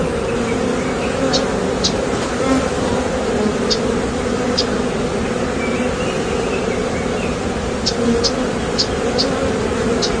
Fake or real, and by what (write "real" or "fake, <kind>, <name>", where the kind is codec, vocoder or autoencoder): real